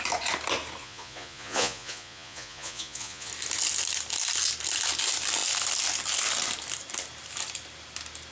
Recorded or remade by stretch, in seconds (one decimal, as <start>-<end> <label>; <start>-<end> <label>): 0.0-0.8 recorded; 0.8-3.3 remade; 3.3-8.3 recorded